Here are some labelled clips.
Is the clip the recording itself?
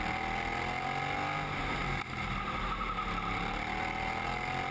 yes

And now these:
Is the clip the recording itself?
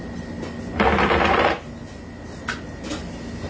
yes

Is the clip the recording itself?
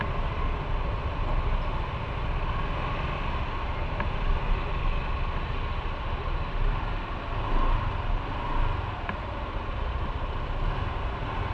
yes